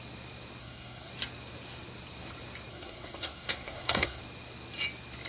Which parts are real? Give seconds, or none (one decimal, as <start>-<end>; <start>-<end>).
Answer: 0.0-0.6; 1.1-2.7; 4.2-5.3